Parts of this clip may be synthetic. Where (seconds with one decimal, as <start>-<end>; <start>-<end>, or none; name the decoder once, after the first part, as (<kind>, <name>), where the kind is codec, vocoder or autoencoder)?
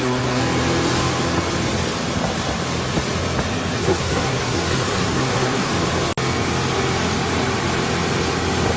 0.0-0.4 (codec, SNAC); 3.8-5.7